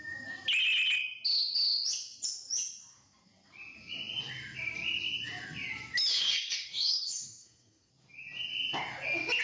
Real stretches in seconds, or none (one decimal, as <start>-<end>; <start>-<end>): 0.0-6.1; 7.9-9.4

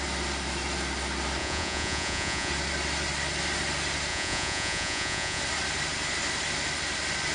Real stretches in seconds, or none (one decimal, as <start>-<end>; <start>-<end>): 0.0-1.4; 2.5-4.1; 5.4-7.3

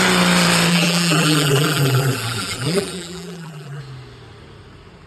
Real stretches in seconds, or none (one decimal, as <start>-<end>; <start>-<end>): 0.0-0.7; 3.8-5.1

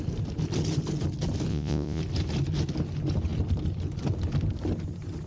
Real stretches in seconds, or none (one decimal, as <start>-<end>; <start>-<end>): 0.0-1.5; 2.0-5.3

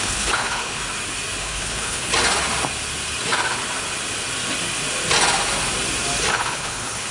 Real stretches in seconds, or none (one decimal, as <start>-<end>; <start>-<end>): 0.8-1.4; 2.1-6.3

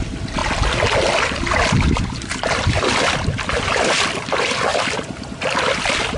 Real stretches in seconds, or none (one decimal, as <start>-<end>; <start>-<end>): 0.0-6.2

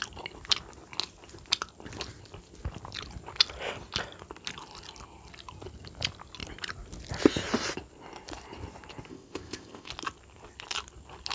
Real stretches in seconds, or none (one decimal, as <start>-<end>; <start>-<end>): 0.0-9.1; 9.9-11.3

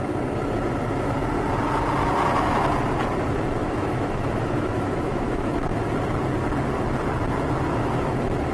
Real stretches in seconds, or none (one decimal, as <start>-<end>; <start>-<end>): 0.0-3.6; 5.8-8.5